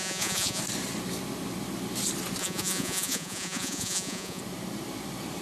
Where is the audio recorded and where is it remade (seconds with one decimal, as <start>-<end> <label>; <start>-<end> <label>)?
0.0-0.6 remade; 0.6-2.4 recorded; 2.4-4.4 remade; 4.4-5.4 recorded